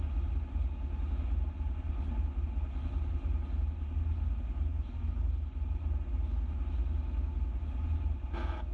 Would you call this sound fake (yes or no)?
no